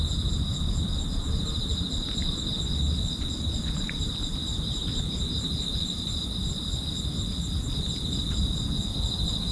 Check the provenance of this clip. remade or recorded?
recorded